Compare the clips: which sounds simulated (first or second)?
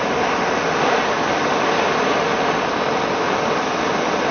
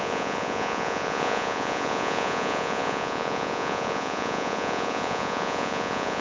second